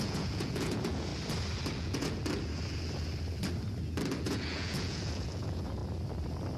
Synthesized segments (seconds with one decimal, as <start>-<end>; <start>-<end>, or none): 0.0-1.1; 1.8-2.2; 4.2-5.8